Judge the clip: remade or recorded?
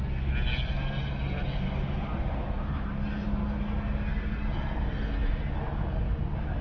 recorded